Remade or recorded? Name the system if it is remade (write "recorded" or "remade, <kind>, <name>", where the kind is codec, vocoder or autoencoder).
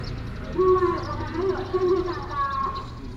recorded